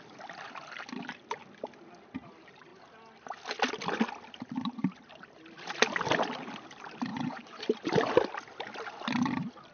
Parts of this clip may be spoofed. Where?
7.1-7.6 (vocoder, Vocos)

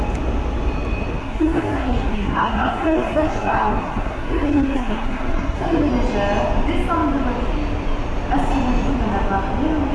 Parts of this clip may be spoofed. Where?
1.2-5.9 (codec, SNAC)